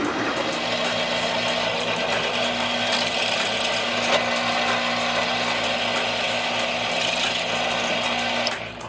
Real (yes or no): yes